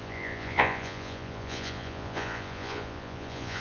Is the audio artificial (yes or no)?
yes